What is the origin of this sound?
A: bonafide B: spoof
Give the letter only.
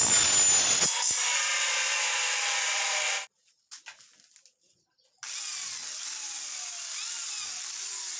A